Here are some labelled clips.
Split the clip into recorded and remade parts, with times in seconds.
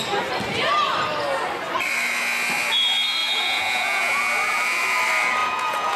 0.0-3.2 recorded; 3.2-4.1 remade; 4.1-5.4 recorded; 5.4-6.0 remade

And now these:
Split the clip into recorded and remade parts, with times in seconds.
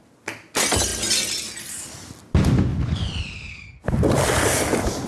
0.0-2.7 recorded; 2.7-3.2 remade; 3.2-5.1 recorded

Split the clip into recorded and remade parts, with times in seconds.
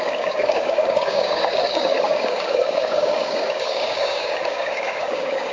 0.0-5.5 remade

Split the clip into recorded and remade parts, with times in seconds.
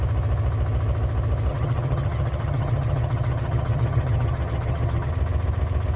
0.0-1.5 recorded; 1.5-5.1 remade; 5.1-6.0 recorded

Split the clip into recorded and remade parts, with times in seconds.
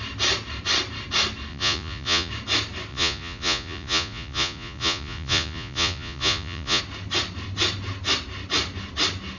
0.0-1.5 recorded; 1.5-2.3 remade; 2.3-2.9 recorded; 2.9-6.8 remade; 6.8-9.4 recorded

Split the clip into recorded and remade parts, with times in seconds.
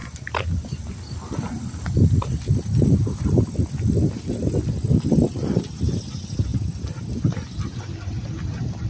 0.0-8.9 recorded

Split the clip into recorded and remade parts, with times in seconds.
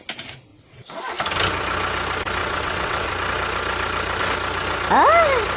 0.0-0.5 recorded; 0.5-1.0 remade; 1.0-2.4 recorded; 2.4-3.1 remade; 3.1-5.6 recorded